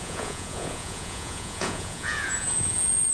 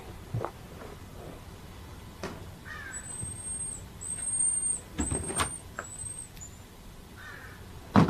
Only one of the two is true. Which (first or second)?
second